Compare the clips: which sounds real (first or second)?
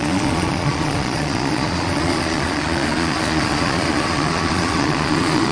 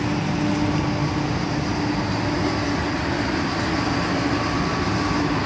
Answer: second